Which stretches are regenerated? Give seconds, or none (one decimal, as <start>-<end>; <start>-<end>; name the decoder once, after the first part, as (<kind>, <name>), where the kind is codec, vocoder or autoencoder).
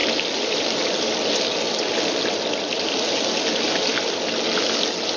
2.7-3.4 (vocoder, BigVGAN v2)